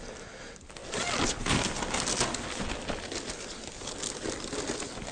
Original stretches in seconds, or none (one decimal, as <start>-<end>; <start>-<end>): 0.0-5.1